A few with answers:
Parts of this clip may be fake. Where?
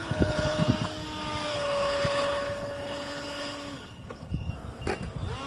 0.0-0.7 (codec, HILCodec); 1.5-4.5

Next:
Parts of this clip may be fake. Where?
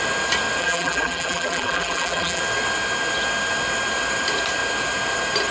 0.6-2.4 (vocoder, BigVGAN v2)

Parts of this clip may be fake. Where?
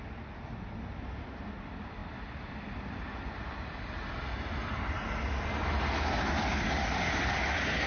none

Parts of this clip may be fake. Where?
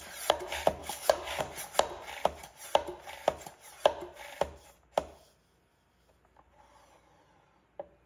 0.8-1.4 (codec, DAC)